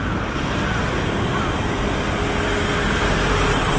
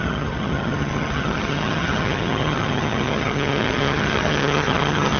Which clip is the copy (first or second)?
second